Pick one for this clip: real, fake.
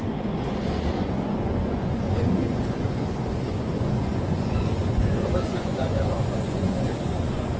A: fake